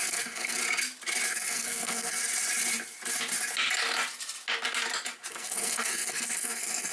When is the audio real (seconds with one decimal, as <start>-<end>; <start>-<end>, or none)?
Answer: 0.6-1.3; 2.2-5.3